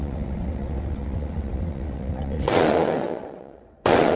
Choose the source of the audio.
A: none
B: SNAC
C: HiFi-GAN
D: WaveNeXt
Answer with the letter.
D